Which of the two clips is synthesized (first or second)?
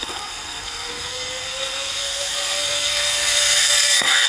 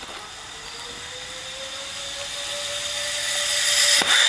first